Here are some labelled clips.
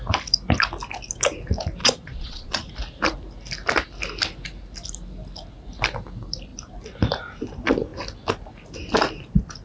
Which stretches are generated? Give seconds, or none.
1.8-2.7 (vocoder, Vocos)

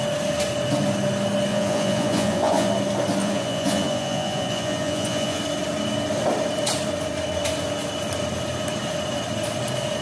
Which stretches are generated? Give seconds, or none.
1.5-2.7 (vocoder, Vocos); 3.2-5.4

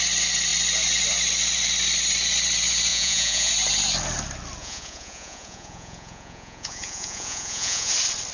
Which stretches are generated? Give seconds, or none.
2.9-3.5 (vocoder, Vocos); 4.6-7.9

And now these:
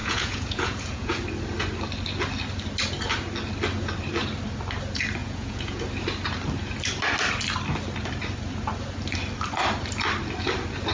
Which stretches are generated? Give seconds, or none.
0.0-1.2 (vocoder, Vocos); 5.2-5.8

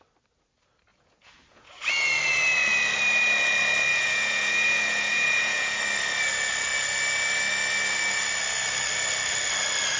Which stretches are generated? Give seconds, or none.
0.9-1.9 (vocoder, Vocos); 3.9-5.8

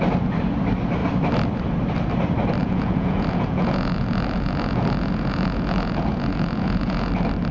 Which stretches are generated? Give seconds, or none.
2.6-7.1 (vocoder, Vocos)